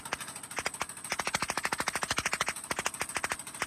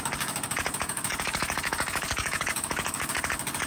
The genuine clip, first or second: first